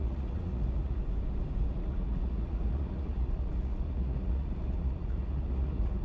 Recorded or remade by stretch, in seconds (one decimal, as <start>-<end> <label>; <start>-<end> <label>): 0.0-1.0 remade; 1.0-1.7 recorded; 1.7-6.0 remade